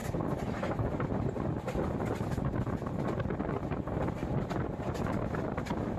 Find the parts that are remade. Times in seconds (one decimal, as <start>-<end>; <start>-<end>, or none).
4.2-5.6

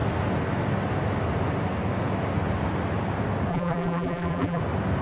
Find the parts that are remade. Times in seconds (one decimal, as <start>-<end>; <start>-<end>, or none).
3.5-4.6

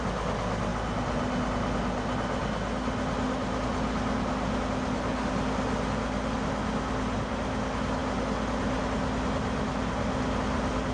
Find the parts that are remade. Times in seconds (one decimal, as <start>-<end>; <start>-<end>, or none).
none

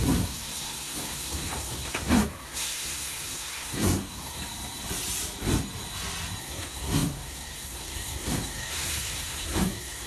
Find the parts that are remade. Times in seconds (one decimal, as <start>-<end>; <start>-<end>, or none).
0.0-4.4; 6.4-10.1

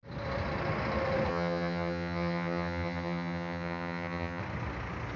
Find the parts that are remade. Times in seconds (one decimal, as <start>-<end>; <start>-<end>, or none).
1.3-4.4